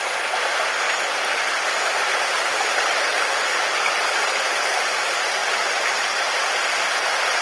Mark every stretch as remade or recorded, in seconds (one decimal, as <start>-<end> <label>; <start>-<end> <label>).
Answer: 0.0-5.4 recorded; 5.4-6.4 remade; 6.4-7.4 recorded